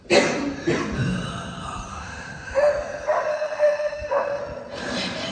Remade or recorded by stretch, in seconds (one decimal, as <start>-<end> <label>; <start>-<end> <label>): 0.0-1.9 recorded; 1.9-2.7 remade; 2.7-3.3 recorded; 3.3-4.4 remade; 4.4-5.3 recorded